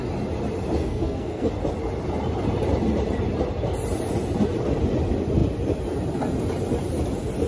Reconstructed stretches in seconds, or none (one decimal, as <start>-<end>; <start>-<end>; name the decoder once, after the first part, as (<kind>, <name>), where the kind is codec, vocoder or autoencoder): 0.8-1.5 (codec, SNAC)